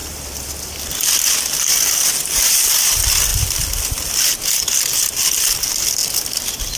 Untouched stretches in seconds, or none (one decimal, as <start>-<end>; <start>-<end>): 0.8-3.3; 3.8-6.0